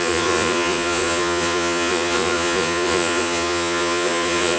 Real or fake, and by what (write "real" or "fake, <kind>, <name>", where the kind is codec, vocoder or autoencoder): fake, vocoder, Vocos